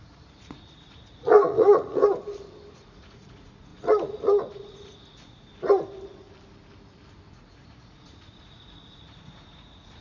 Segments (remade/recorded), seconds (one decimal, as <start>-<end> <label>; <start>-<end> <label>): 0.0-2.0 remade; 2.0-2.7 recorded; 2.7-5.5 remade; 5.5-7.3 recorded; 7.3-10.0 remade